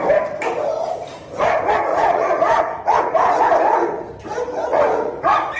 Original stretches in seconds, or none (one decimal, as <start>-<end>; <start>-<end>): 0.0-1.9; 3.4-4.7